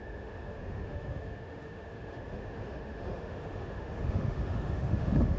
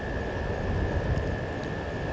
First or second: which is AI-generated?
first